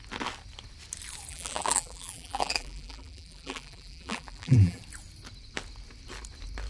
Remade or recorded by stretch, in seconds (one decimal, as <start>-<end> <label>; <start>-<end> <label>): 0.0-1.3 recorded; 1.3-4.8 remade; 4.8-6.7 recorded

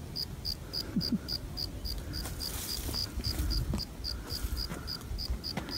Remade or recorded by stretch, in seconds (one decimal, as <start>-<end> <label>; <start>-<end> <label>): 0.0-4.7 recorded; 4.7-5.8 remade

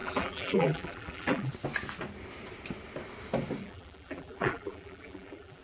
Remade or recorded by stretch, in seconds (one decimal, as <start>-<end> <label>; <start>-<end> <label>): 0.0-1.5 remade; 1.5-3.6 recorded; 3.6-5.6 remade